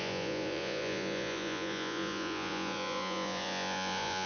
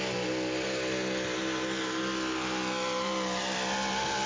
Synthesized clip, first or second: first